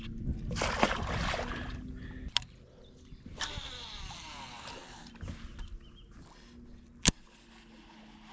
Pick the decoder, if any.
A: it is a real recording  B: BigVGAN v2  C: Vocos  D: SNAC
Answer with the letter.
A